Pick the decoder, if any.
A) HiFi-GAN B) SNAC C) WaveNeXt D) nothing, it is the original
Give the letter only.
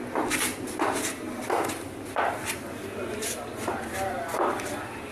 D